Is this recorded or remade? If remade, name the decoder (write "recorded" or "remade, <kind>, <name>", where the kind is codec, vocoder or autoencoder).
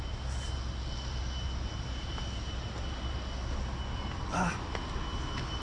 recorded